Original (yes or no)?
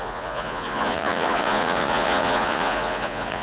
no